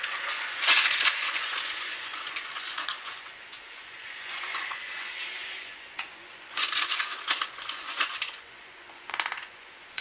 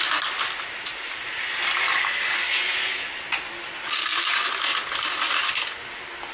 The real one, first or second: second